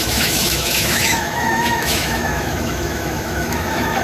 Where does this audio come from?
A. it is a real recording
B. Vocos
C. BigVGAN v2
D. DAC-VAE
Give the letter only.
D